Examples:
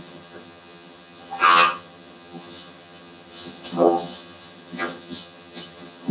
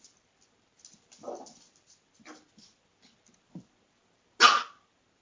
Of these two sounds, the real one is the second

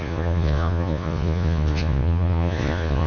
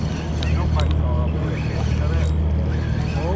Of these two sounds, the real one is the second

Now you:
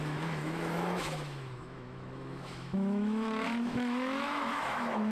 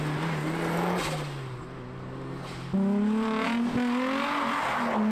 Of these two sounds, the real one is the second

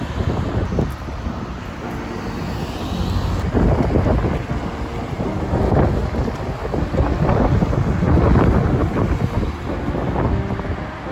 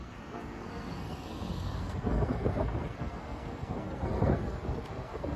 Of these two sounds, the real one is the first